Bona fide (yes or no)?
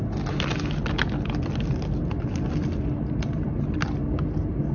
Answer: yes